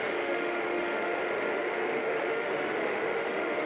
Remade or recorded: remade